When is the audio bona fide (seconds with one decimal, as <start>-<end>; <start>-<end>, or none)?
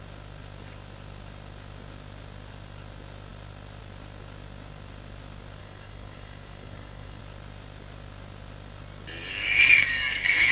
0.0-5.6; 7.2-9.3